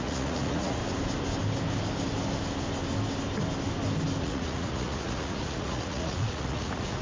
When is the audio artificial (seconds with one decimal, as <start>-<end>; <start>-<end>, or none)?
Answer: 0.0-0.8; 4.2-7.0

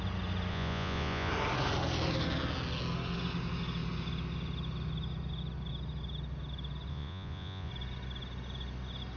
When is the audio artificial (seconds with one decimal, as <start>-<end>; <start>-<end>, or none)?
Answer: 0.5-1.3; 6.9-7.7

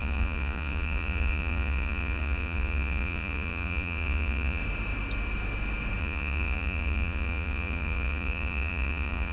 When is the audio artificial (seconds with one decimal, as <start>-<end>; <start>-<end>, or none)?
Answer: 0.0-4.6; 6.0-9.3

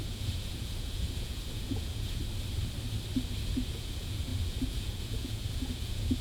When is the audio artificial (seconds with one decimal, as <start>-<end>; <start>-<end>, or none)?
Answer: 0.0-2.2; 3.5-6.2

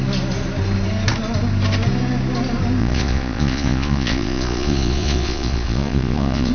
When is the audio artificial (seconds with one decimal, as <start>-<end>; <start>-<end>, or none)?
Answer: 2.8-6.5

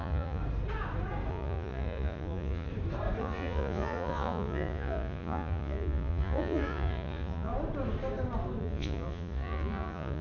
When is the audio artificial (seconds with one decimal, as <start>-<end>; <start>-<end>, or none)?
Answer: 0.0-0.4; 1.3-2.7; 3.2-7.5; 8.6-10.2

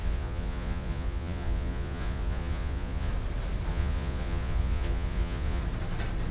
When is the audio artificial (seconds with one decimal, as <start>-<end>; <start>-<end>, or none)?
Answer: 0.0-3.1; 3.7-5.6

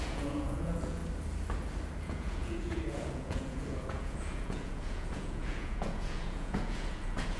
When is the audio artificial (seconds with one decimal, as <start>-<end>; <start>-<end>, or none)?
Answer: 0.0-1.0; 2.0-7.4